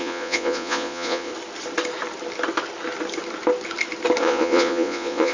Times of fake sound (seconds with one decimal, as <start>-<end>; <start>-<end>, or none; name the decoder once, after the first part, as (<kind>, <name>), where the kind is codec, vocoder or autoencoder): 0.0-1.3 (vocoder, Vocos); 4.2-5.3